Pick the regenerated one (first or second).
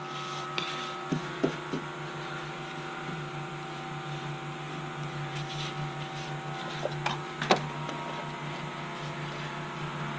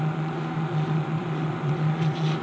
second